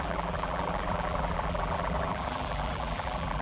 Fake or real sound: fake